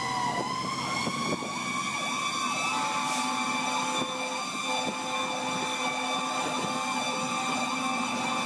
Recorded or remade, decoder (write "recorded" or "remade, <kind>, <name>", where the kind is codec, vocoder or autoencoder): recorded